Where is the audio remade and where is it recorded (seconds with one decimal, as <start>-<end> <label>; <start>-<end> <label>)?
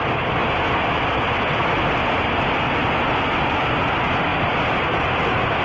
0.0-5.6 recorded